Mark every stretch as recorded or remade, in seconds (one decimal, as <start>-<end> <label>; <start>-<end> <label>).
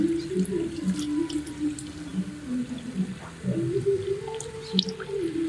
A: 0.0-5.5 recorded